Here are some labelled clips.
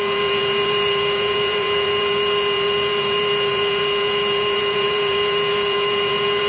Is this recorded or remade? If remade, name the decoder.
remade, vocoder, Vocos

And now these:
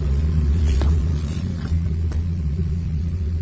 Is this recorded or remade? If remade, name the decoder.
remade, vocoder, Vocos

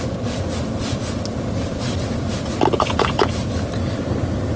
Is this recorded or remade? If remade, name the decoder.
recorded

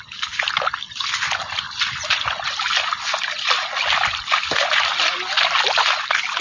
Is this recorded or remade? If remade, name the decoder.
recorded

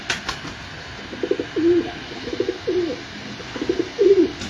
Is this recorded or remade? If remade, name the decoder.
recorded